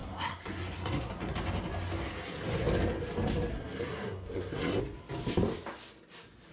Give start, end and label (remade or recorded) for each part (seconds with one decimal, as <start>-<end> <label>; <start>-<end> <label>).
0.0-1.3 remade; 1.3-3.5 recorded; 3.5-4.8 remade; 4.8-6.5 recorded